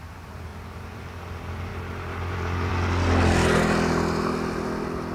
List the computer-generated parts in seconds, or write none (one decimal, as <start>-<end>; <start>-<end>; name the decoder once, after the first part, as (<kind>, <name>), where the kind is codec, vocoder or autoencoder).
0.5-1.0 (vocoder, BigVGAN v2); 1.7-2.7